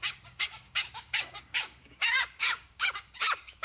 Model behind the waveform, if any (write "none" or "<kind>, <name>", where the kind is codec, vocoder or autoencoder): codec, DAC